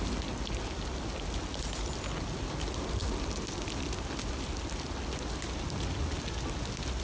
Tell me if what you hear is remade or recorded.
recorded